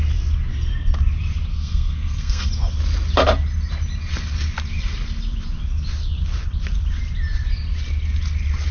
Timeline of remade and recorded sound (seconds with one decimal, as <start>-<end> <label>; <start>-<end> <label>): 0.0-1.5 recorded; 1.5-2.5 remade; 2.5-8.7 recorded